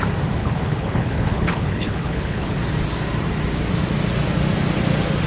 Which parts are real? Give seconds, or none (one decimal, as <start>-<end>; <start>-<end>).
0.0-0.4; 2.5-5.3